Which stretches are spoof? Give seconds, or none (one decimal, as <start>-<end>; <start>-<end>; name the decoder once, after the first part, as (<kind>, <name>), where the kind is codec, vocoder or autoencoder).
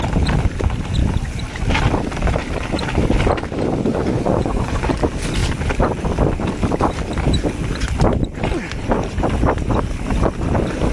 3.9-4.9 (vocoder, Vocos)